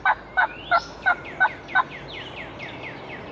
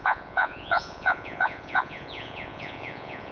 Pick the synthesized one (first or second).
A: second